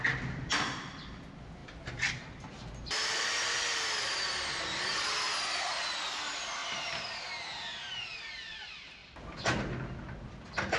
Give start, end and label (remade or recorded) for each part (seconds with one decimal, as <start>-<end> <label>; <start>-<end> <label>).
0.0-10.8 recorded